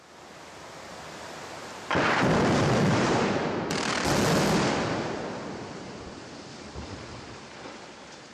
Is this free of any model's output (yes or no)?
yes